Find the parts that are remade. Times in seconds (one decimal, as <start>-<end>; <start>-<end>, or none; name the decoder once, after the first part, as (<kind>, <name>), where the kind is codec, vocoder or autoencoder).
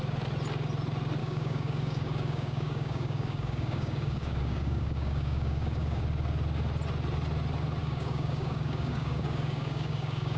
1.2-6.0 (codec, DAC); 7.8-10.4